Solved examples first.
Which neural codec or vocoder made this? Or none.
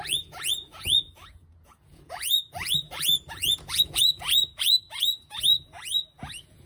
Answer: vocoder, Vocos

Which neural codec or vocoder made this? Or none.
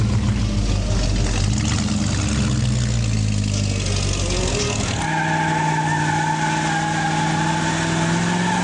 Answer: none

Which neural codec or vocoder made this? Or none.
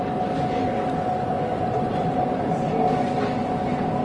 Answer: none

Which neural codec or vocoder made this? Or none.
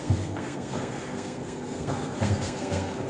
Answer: codec, SNAC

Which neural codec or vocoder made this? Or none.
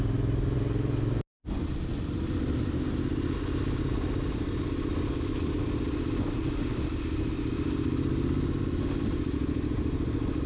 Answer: none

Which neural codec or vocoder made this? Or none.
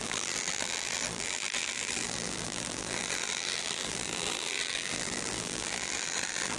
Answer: vocoder, BigVGAN v2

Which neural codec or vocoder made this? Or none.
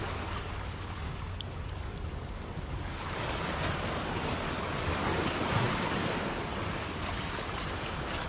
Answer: codec, DAC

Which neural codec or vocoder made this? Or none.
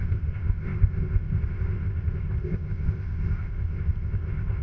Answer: codec, ZipCodec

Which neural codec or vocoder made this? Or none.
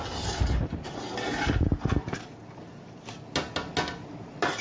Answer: none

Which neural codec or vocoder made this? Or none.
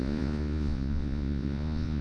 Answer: vocoder, Vocos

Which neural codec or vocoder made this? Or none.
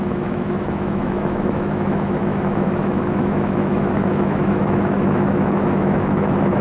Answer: autoencoder, DAC-VAE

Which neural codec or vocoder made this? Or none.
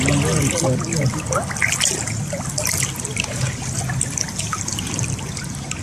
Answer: none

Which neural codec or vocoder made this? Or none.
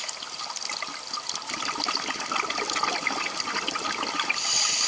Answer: none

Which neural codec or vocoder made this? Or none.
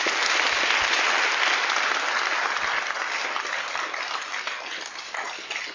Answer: none